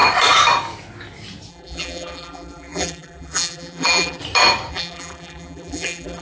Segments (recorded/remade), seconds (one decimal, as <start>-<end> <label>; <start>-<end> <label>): 0.0-1.5 recorded; 1.5-4.2 remade; 4.2-4.7 recorded; 4.7-6.2 remade